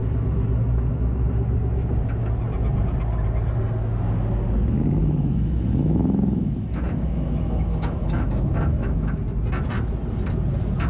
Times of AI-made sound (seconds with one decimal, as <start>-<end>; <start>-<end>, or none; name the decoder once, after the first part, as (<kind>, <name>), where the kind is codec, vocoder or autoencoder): 5.0-9.2 (autoencoder, DAC-VAE)